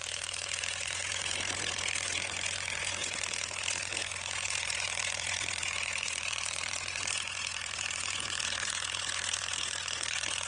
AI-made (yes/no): yes